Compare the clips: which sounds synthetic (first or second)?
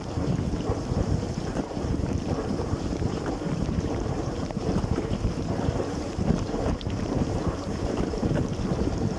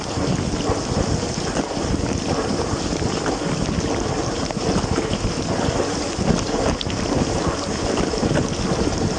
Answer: first